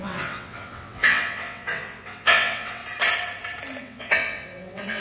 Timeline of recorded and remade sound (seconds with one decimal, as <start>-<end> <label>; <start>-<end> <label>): 0.0-2.8 remade; 2.8-3.8 recorded; 3.8-5.0 remade